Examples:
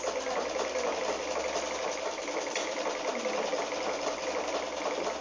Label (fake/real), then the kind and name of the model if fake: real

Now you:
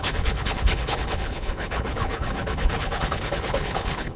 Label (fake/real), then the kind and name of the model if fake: fake, codec, HILCodec